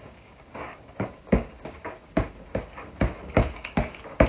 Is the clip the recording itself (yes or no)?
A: no